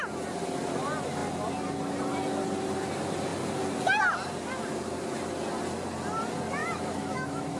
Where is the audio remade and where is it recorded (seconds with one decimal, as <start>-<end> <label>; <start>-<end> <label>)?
0.0-6.6 recorded; 6.6-7.6 remade

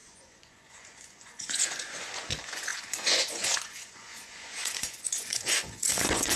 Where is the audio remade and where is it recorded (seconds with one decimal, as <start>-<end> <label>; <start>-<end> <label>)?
0.0-6.4 remade

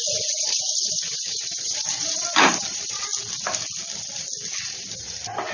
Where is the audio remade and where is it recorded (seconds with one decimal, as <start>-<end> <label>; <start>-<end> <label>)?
0.0-3.1 remade; 3.1-4.6 recorded; 4.6-5.5 remade

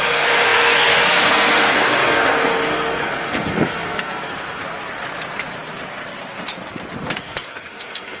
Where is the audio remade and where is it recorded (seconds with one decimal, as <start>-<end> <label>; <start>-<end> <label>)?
0.0-5.0 remade; 5.0-7.2 recorded; 7.2-8.2 remade